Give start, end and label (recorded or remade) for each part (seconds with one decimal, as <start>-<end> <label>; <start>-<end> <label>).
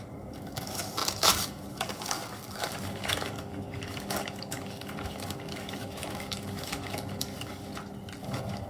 0.0-7.7 remade; 7.7-8.2 recorded; 8.2-8.7 remade